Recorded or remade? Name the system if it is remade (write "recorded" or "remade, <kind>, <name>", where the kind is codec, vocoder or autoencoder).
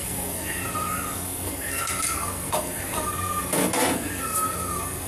remade, codec, SNAC